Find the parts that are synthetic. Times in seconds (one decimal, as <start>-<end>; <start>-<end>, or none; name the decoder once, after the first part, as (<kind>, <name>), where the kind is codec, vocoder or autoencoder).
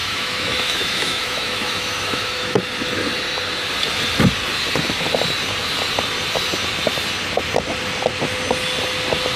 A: 0.0-2.6 (autoencoder, DAC-VAE)